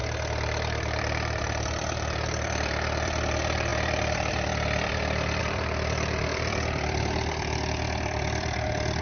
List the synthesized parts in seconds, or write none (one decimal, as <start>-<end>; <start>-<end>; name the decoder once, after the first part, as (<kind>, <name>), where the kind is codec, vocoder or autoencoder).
0.0-9.0 (vocoder, BigVGAN v2)